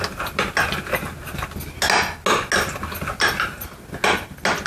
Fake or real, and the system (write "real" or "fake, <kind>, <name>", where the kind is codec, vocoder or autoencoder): real